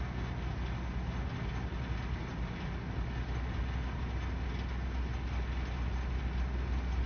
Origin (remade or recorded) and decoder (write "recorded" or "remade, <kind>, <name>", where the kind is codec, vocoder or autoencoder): recorded